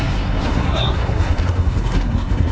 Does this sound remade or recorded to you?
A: remade